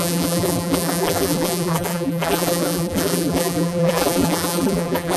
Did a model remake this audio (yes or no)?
yes